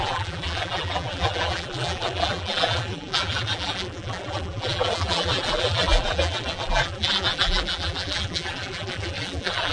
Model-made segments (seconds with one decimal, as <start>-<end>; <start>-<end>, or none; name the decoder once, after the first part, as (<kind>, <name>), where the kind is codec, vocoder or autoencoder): 0.0-9.7 (vocoder, BigVGAN v2)